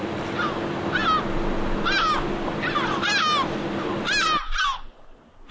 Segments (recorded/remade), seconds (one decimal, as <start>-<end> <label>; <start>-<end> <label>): 0.0-5.5 recorded